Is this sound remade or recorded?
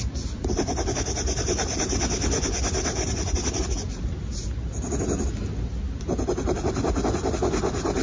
recorded